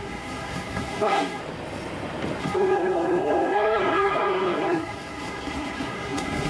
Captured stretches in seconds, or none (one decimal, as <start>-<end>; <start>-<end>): 1.4-2.4